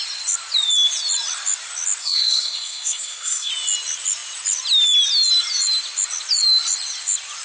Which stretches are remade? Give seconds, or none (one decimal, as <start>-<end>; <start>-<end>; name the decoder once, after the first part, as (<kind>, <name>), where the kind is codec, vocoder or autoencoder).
2.0-3.5 (codec, SNAC)